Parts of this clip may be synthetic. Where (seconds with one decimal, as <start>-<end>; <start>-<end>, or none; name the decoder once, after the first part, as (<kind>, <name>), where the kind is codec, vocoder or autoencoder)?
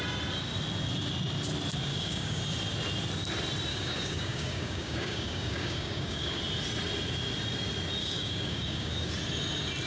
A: 1.9-2.4 (codec, DAC); 3.7-6.4; 8.0-9.1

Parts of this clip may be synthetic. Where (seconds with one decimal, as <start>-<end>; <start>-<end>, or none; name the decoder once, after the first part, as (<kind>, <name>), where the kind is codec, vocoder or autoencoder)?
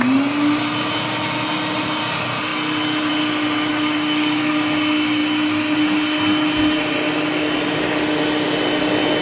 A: 3.7-4.5 (codec, DAC)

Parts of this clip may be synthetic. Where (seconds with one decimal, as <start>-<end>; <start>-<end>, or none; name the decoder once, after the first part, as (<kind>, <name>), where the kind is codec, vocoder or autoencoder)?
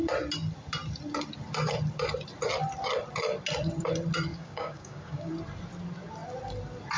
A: 4.3-5.3 (codec, DAC)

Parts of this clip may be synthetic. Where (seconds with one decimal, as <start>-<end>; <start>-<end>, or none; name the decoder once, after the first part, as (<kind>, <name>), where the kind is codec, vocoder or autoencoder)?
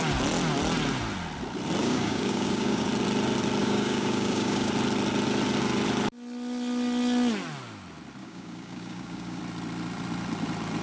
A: 1.8-2.9 (codec, DAC); 3.6-4.7; 8.2-9.4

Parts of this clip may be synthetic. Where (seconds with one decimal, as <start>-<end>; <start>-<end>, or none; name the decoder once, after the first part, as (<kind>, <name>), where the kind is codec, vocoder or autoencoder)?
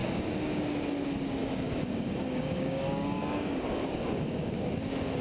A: 0.0-0.6 (codec, DAC); 1.4-4.5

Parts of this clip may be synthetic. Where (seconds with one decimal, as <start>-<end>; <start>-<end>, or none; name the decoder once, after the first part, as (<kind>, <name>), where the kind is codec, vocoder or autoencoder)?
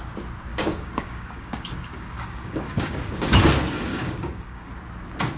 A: 0.5-3.4 (codec, DAC); 3.9-4.7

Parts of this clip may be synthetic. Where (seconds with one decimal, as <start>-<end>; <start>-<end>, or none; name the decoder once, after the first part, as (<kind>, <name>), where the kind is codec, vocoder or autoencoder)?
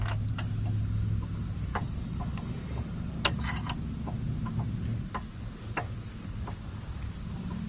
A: 1.7-2.8 (codec, DAC)